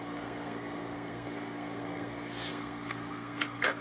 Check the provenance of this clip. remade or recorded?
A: remade